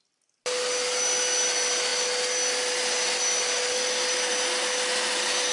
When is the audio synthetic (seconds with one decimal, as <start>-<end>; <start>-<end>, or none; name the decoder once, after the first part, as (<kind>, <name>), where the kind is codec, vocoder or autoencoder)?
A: none